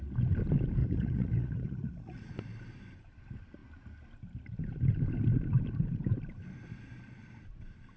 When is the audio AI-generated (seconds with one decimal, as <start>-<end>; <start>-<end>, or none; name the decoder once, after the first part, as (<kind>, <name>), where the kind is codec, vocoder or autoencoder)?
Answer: 0.8-2.3 (vocoder, Vocos)